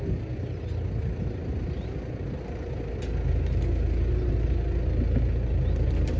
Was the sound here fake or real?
real